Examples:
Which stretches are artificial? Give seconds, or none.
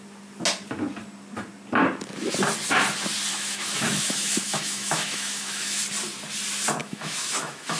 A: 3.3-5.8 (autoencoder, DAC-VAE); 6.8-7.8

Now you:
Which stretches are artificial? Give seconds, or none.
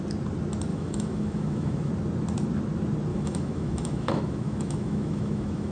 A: 0.7-1.9 (autoencoder, DAC-VAE); 3.1-5.7